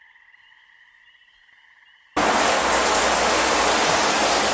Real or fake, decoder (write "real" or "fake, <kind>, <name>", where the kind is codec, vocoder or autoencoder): real